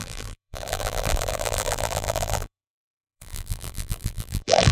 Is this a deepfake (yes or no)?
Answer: yes